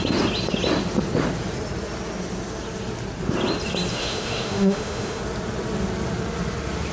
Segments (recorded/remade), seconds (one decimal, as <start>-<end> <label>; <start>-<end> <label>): 0.0-3.9 recorded; 3.9-5.2 remade; 5.2-6.9 recorded